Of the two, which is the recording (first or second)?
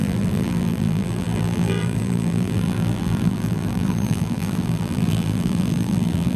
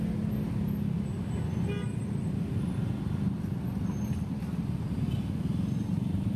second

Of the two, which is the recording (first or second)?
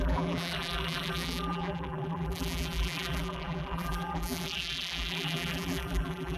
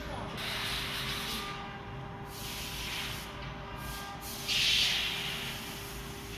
second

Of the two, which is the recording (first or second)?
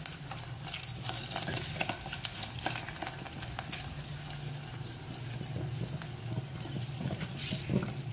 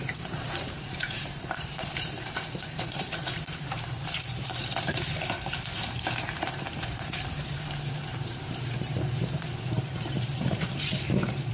first